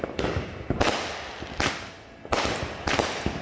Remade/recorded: recorded